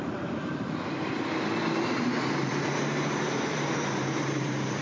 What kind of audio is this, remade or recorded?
remade